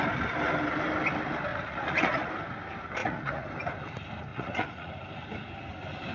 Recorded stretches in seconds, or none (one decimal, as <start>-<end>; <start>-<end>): 0.0-1.5; 2.3-3.0; 3.5-4.3; 4.9-6.1